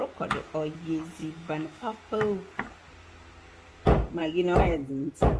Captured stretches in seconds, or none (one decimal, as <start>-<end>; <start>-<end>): 0.0-1.2; 2.0-5.4